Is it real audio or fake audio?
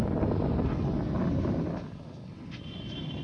real